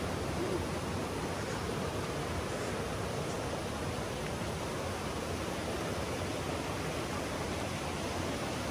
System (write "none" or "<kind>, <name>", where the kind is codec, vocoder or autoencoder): none